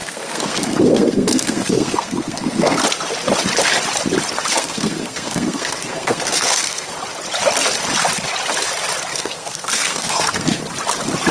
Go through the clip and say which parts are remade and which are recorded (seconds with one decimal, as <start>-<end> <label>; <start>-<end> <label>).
0.0-2.8 remade; 2.8-4.5 recorded; 4.5-6.9 remade; 6.9-9.1 recorded; 9.1-10.6 remade; 10.6-11.3 recorded